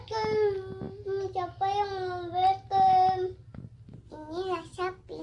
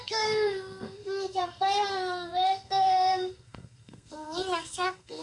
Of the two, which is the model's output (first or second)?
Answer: second